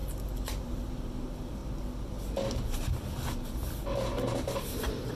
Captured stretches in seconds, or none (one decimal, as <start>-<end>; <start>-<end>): 1.6-5.1